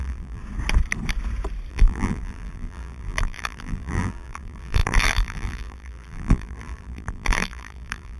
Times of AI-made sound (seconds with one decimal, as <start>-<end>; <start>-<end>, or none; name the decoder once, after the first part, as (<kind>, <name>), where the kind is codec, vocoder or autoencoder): 0.0-0.4 (vocoder, BigVGAN v2); 1.7-8.2